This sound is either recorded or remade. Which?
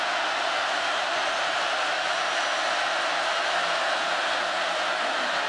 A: recorded